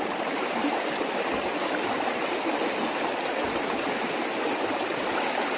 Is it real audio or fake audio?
real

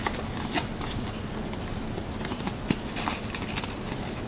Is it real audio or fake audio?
real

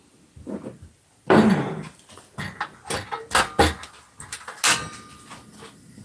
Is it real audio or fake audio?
real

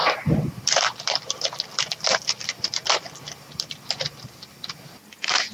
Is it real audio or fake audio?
fake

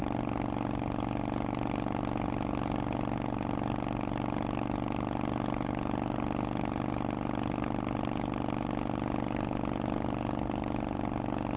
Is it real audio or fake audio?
real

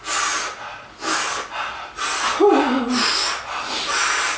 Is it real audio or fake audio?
real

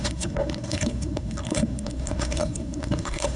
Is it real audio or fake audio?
fake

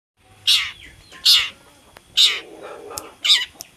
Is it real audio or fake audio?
real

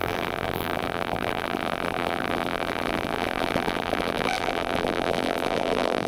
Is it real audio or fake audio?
fake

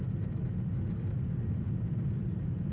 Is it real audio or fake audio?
real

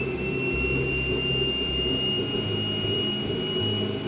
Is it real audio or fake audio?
real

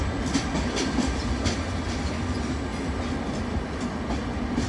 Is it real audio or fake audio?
real